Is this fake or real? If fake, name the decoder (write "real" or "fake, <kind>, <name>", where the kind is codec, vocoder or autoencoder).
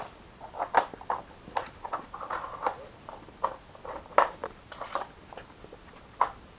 real